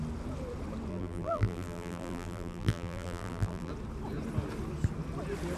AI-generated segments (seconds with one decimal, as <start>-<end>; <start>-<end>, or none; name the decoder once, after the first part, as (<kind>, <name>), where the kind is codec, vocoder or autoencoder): 0.9-3.7 (vocoder, BigVGAN v2)